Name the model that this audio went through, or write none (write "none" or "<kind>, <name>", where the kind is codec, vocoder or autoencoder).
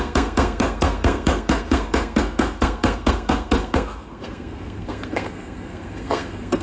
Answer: codec, SNAC